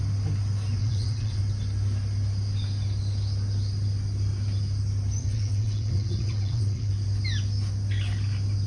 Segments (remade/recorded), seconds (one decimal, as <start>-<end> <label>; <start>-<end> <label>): 0.0-0.8 recorded; 0.8-1.4 remade; 1.4-5.2 recorded; 5.2-6.9 remade; 6.9-8.7 recorded